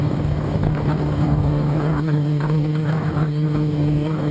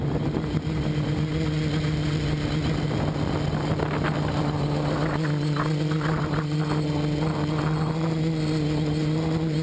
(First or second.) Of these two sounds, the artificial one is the first